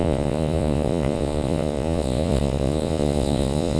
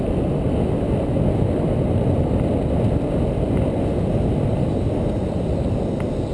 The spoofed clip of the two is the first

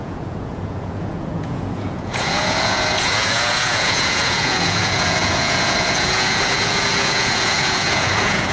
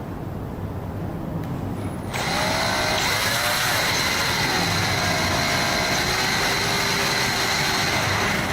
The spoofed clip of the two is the first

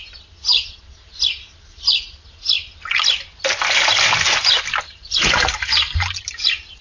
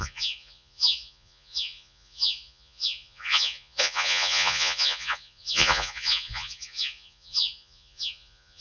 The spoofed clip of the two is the second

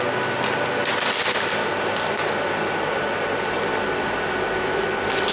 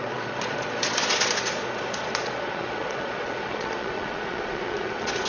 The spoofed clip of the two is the second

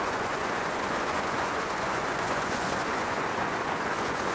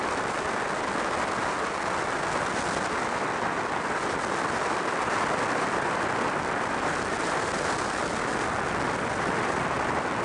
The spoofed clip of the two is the first